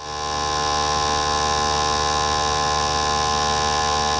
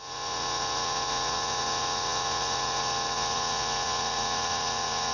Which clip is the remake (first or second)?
second